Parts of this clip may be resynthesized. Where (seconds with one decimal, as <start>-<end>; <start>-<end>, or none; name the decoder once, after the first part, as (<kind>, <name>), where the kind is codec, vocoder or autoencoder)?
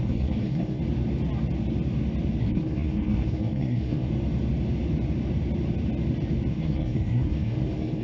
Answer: 0.0-0.8 (codec, SNAC); 2.4-4.1; 6.5-8.0